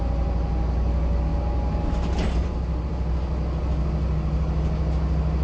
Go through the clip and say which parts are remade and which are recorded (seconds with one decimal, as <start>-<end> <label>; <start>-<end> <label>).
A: 0.0-5.4 recorded

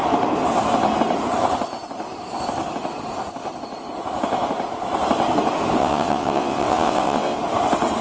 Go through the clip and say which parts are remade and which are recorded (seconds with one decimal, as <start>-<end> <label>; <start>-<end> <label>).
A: 0.0-5.8 recorded; 5.8-7.4 remade; 7.4-8.0 recorded

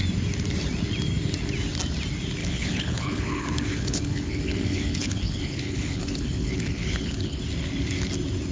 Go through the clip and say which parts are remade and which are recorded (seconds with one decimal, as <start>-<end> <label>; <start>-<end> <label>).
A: 0.0-2.4 recorded; 2.4-7.4 remade; 7.4-8.5 recorded